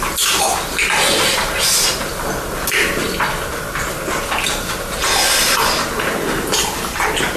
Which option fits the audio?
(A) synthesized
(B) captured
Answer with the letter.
B